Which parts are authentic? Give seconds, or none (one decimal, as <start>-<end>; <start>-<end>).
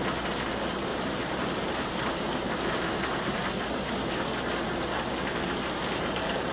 0.0-0.9; 3.9-5.8